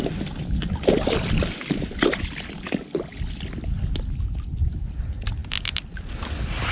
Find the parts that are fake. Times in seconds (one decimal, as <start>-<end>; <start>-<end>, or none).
none